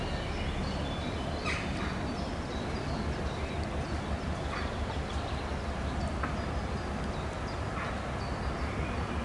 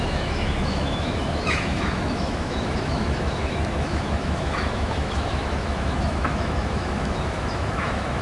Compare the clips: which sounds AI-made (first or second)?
second